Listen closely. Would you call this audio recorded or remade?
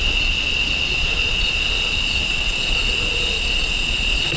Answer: remade